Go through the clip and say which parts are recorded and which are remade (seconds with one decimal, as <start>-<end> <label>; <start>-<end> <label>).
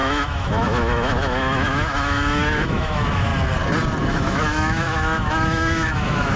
0.0-3.3 remade; 3.3-4.0 recorded; 4.0-6.4 remade